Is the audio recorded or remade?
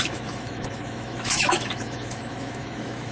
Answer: remade